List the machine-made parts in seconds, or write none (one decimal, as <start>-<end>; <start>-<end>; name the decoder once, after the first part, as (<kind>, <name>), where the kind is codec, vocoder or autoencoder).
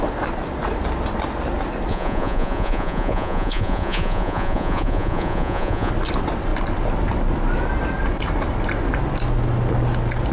1.9-5.9 (vocoder, Vocos)